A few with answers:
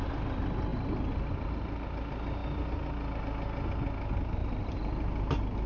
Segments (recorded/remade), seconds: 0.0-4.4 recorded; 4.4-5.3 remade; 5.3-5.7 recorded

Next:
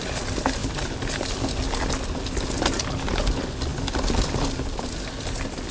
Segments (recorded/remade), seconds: 0.0-5.7 recorded

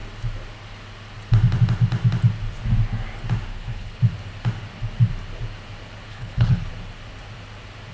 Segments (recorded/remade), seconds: 0.0-3.5 recorded; 3.5-4.0 remade; 4.0-6.1 recorded; 6.1-6.7 remade; 6.7-7.9 recorded

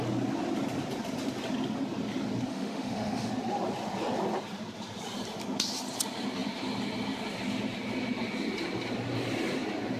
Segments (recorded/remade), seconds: 0.0-2.5 recorded; 2.5-3.3 remade; 3.3-10.0 recorded

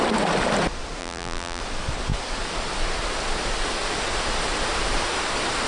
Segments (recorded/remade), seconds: 0.0-1.0 recorded; 1.0-1.6 remade; 1.6-5.7 recorded

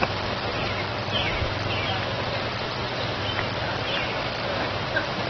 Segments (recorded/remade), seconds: 0.0-5.3 recorded